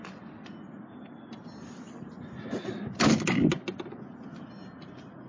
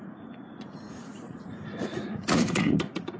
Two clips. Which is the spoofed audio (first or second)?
second